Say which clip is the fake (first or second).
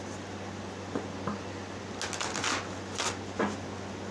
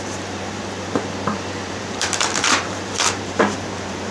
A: second